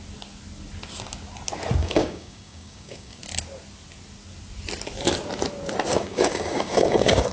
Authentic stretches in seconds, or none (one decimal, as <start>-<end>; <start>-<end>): 0.0-1.8; 3.2-5.9